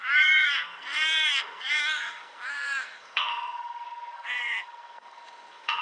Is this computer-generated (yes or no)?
yes